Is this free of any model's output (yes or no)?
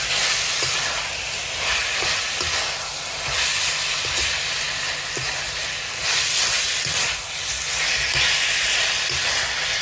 yes